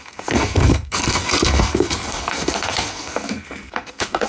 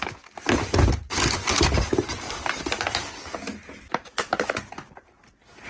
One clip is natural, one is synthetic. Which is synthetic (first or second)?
first